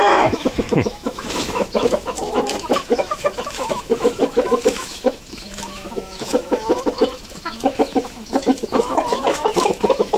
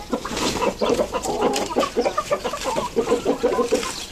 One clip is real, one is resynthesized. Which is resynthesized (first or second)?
first